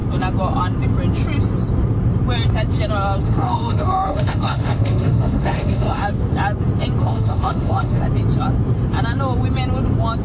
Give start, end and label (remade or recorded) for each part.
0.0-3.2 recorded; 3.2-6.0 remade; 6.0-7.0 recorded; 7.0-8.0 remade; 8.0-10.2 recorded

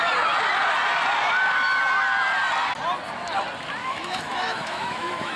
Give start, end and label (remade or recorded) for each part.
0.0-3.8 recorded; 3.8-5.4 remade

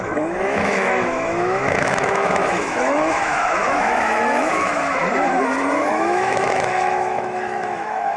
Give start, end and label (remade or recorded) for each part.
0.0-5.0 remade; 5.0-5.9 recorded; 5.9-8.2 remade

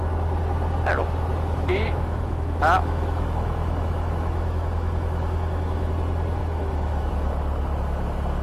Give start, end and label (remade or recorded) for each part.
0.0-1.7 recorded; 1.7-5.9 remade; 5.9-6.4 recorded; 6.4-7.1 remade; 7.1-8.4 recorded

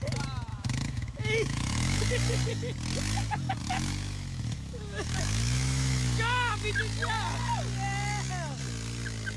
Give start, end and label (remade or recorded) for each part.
0.0-0.5 recorded; 0.5-2.1 remade; 2.1-3.6 recorded; 3.6-6.7 remade; 6.7-9.4 recorded

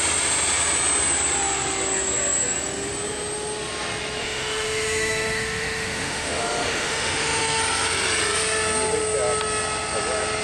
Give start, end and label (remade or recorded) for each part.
0.0-4.2 recorded; 4.2-7.6 remade; 7.6-10.4 recorded